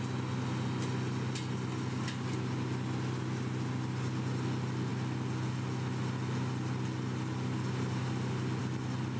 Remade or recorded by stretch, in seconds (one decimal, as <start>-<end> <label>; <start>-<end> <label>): 0.0-9.2 recorded